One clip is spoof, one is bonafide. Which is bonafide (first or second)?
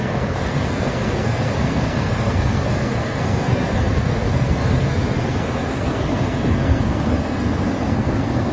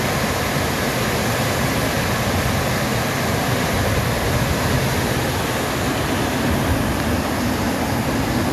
second